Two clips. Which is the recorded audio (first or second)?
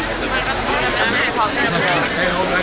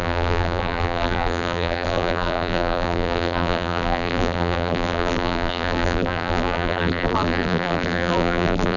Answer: first